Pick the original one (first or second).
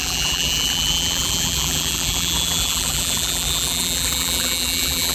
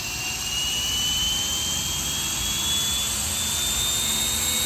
second